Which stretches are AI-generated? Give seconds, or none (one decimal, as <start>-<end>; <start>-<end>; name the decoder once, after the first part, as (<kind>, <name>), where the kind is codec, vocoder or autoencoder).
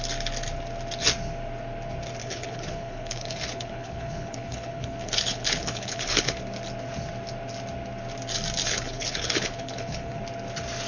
2.2-6.4 (codec, HILCodec); 8.6-10.2